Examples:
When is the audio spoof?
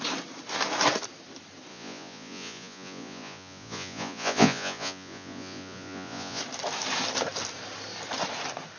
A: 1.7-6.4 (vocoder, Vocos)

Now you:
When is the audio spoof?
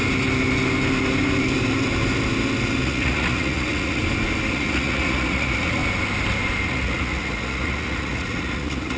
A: 2.8-4.0 (vocoder, Vocos); 4.5-5.8; 6.7-9.0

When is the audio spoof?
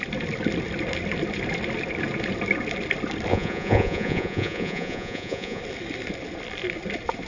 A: 3.3-5.6 (vocoder, Vocos)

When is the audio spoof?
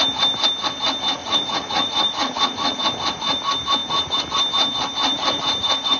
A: 1.2-2.8 (vocoder, Vocos)